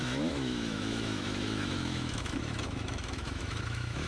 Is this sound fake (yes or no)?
yes